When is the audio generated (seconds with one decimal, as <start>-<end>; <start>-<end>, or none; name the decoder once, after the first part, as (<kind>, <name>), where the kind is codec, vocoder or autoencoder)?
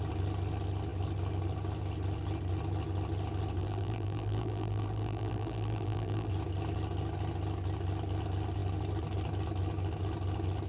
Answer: 3.6-6.3 (vocoder, BigVGAN v2)